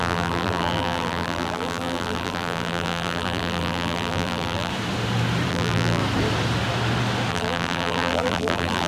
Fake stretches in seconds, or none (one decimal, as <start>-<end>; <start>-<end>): 0.0-4.7; 5.5-6.0; 7.3-8.9